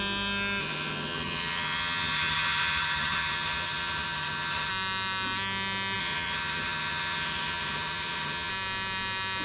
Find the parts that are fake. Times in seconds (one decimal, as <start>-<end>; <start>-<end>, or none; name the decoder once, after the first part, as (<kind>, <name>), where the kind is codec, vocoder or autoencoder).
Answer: 0.6-4.7 (vocoder, HiFi-GAN); 6.0-8.5